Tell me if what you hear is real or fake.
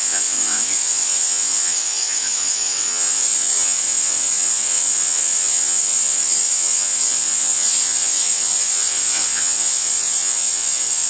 fake